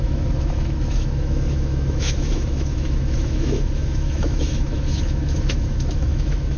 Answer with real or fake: fake